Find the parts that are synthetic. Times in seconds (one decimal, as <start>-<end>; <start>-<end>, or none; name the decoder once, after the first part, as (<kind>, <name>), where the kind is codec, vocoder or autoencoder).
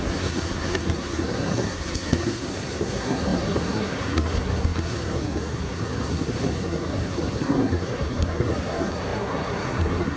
0.0-10.2 (codec, SNAC)